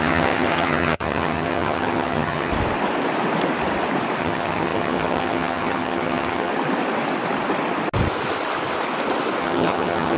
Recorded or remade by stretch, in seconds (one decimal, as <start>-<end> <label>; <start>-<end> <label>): 0.0-2.5 remade; 2.5-4.2 recorded; 4.2-6.5 remade; 6.5-9.4 recorded; 9.4-10.2 remade